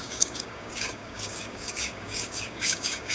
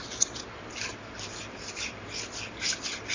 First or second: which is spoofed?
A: first